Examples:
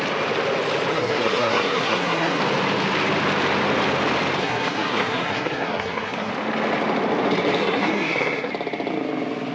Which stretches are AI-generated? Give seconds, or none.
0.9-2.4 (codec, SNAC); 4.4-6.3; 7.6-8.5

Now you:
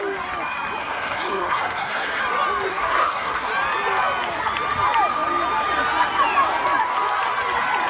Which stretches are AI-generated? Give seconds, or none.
0.8-2.2 (codec, SNAC); 2.7-3.5